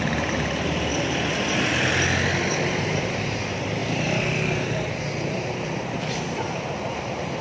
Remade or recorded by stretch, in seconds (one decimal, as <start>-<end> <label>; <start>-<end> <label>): 0.0-0.9 remade; 0.9-2.7 recorded; 2.7-7.4 remade